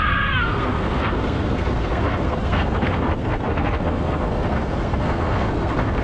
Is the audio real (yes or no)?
no